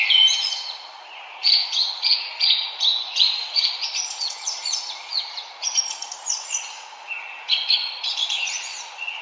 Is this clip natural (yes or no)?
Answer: no